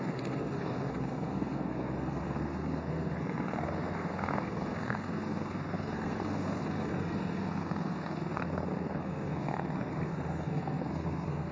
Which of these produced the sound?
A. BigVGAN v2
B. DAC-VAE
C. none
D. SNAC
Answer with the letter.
D